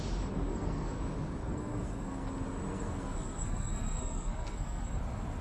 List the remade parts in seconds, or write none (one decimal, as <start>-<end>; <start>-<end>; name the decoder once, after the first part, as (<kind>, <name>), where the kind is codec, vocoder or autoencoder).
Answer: 0.5-1.0 (codec, SNAC); 1.4-2.3; 2.7-4.9

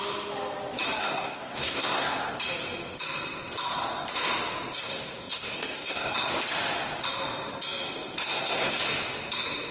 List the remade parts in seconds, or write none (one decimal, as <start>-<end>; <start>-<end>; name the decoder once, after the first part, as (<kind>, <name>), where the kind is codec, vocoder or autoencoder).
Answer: 1.0-2.2 (codec, SNAC); 4.8-6.1; 8.2-8.8

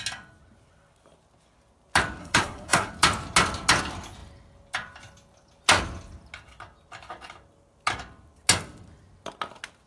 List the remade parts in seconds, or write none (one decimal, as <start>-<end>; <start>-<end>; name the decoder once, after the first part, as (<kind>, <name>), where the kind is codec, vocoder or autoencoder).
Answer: 2.2-2.9 (codec, SNAC)